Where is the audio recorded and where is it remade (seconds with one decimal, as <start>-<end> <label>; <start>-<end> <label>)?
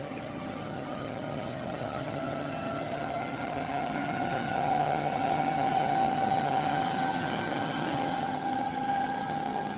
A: 0.0-9.8 remade